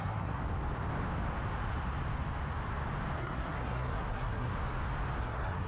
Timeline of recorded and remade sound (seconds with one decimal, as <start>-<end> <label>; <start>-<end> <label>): 0.0-0.4 remade; 0.4-3.2 recorded; 3.2-4.5 remade; 4.5-5.2 recorded; 5.2-5.7 remade